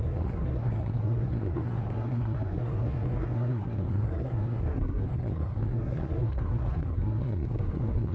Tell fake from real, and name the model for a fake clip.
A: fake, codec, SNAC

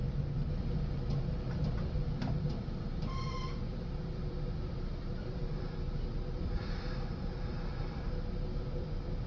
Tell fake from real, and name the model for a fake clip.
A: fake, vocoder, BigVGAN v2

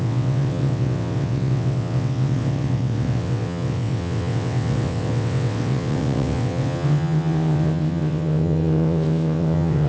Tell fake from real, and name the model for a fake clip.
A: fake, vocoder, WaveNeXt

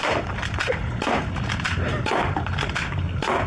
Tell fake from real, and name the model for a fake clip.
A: real